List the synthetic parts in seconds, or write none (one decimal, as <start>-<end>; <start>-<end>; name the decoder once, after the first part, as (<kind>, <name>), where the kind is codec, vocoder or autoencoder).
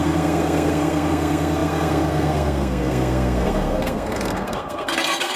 0.0-5.4 (codec, SNAC)